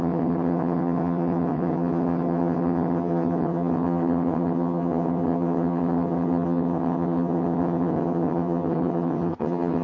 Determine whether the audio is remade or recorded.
remade